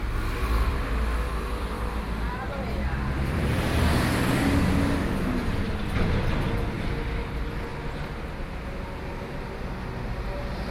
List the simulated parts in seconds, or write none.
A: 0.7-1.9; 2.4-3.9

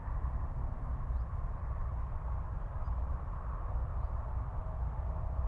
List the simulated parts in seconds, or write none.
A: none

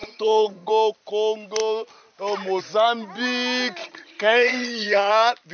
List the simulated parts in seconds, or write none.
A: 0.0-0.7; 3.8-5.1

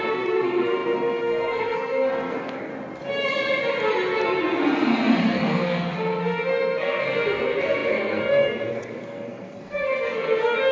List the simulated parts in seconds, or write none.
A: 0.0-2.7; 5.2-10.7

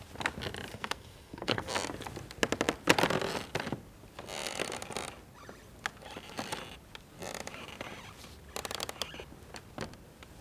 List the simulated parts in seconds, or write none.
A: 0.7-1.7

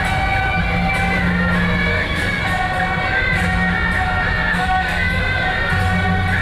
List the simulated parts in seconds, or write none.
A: 1.9-2.4; 4.5-5.2

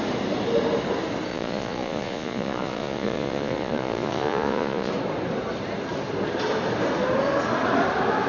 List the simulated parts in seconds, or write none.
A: 1.3-4.9